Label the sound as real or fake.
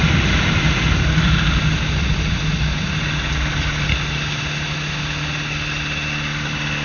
real